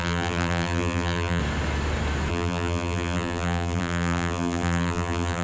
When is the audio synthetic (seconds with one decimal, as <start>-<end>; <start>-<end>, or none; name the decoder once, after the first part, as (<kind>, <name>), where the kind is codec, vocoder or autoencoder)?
0.0-1.4 (vocoder, BigVGAN v2); 2.3-5.4